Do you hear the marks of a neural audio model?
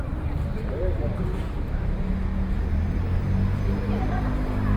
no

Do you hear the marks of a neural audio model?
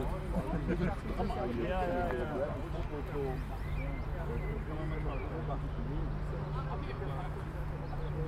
no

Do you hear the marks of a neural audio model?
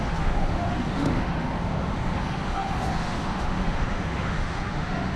yes